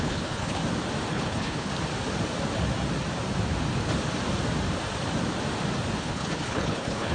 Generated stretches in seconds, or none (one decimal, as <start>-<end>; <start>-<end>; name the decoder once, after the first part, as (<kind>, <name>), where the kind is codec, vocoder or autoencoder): 0.0-0.6 (codec, HILCodec); 1.1-1.7; 6.0-7.1